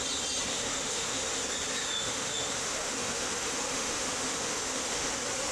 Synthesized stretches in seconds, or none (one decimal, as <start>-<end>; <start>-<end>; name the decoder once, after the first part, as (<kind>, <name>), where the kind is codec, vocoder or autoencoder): 0.5-1.4 (autoencoder, DAC-VAE); 1.8-5.1